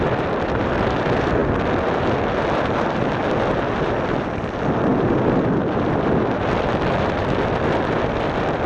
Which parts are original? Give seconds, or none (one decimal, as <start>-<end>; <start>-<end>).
1.4-3.7